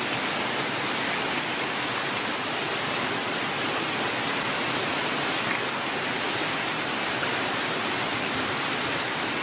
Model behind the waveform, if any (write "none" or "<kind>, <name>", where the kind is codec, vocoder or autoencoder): none